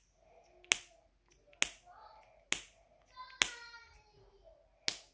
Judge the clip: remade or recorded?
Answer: recorded